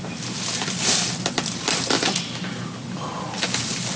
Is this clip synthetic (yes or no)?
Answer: no